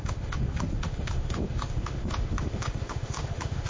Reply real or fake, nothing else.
fake